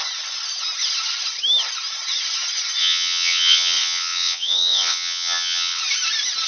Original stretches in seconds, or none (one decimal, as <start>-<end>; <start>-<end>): 0.0-2.8; 5.8-6.5